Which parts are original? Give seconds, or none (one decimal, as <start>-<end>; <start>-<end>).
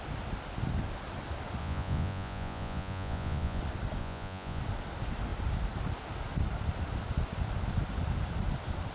0.0-1.6; 3.6-4.0; 4.6-8.9